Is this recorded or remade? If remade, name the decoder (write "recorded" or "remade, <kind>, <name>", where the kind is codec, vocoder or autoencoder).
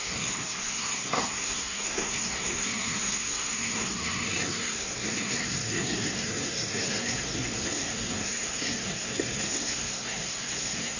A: remade, codec, SNAC